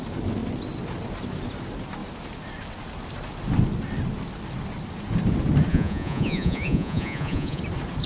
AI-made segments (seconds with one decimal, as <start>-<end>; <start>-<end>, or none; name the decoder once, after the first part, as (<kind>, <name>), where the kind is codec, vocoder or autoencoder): 5.7-7.6 (vocoder, Vocos)